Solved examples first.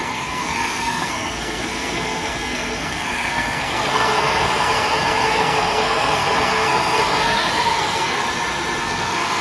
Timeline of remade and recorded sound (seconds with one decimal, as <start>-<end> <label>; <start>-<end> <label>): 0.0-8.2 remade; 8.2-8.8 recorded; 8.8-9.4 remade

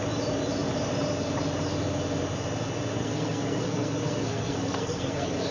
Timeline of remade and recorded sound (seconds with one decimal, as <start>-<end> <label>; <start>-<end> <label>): 0.0-3.0 recorded; 3.0-5.5 remade

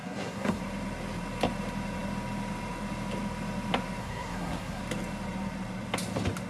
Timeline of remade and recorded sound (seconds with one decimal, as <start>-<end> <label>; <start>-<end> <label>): 0.0-0.6 remade; 0.6-4.0 recorded; 4.0-4.8 remade; 4.8-6.5 recorded